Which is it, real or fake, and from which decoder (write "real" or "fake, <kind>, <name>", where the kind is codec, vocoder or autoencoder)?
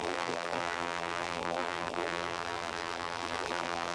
fake, vocoder, BigVGAN v2